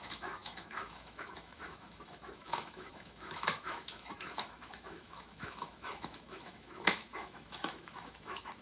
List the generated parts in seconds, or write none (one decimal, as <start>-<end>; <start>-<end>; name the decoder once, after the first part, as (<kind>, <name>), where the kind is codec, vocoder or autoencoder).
0.0-8.6 (autoencoder, DAC-VAE)